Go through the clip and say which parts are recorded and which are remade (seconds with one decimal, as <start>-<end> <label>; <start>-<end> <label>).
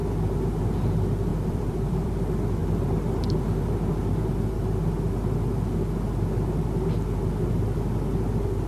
0.0-1.3 recorded; 1.3-2.1 remade; 2.1-8.7 recorded